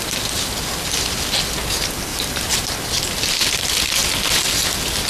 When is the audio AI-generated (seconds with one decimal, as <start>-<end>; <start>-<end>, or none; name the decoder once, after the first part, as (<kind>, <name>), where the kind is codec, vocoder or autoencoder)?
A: 2.1-2.9 (vocoder, BigVGAN v2)